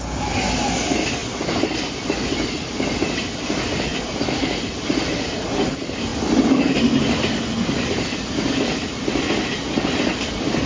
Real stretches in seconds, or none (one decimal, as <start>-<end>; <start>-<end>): 0.0-10.7

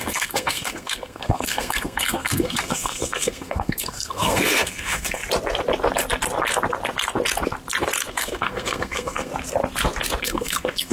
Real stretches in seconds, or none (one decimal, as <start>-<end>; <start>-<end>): 5.2-8.1; 9.3-10.2

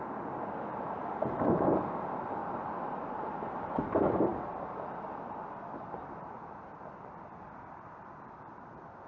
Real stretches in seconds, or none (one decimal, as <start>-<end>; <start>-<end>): 0.0-9.1

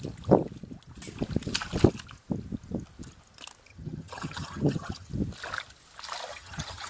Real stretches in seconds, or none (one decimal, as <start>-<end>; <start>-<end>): 0.0-3.7; 5.1-6.3